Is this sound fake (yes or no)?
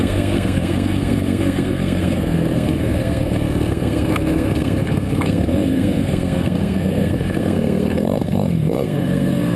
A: yes